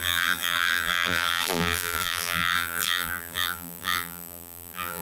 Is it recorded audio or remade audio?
remade